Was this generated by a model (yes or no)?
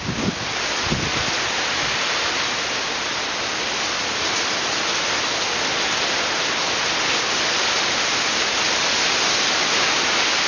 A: no